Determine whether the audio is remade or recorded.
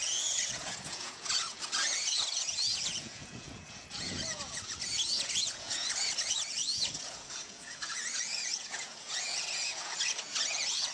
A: remade